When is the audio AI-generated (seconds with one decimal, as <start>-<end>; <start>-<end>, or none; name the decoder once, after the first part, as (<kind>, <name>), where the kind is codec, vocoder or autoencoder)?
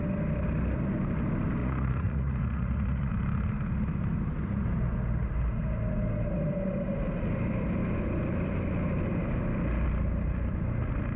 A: 1.6-3.1 (vocoder, Vocos)